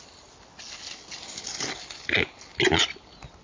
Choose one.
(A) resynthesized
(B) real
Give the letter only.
B